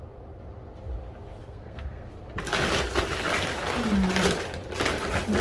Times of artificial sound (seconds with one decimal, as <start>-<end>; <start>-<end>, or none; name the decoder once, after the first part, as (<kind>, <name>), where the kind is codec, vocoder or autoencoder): 1.4-2.1 (codec, SNAC)